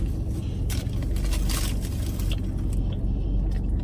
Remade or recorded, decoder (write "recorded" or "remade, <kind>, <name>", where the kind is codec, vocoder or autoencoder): recorded